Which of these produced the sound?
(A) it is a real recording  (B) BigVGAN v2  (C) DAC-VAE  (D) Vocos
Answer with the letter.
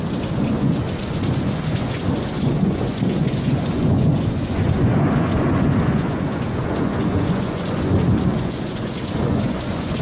D